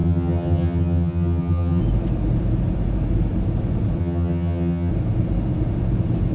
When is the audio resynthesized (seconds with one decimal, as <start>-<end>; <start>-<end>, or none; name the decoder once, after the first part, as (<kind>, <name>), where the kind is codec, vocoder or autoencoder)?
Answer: 0.0-1.8 (vocoder, HiFi-GAN); 4.0-4.9